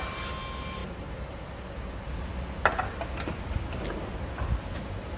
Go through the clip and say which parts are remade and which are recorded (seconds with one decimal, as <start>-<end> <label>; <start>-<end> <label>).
0.0-0.8 recorded; 0.8-1.5 remade; 1.5-5.2 recorded